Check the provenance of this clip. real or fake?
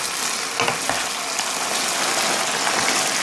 real